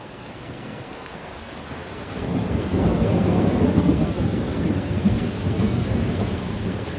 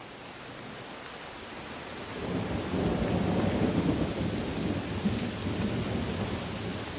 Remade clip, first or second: first